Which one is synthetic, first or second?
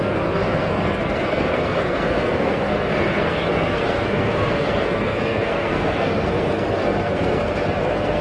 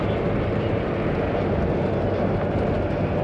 first